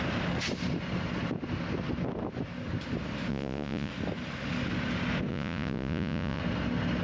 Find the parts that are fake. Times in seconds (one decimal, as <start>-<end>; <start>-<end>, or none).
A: 3.3-3.9; 5.3-6.4

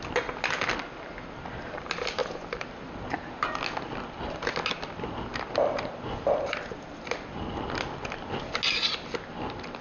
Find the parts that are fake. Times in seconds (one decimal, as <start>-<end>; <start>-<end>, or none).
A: 5.3-6.7

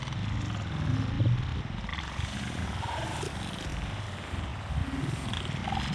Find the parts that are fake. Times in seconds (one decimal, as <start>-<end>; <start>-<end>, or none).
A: 1.5-3.3; 3.7-4.5